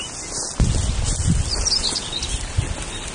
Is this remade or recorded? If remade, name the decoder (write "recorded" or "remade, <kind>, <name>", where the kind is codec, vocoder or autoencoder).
recorded